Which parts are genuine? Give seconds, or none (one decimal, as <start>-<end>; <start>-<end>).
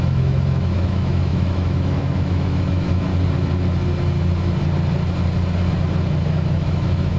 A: 3.1-6.2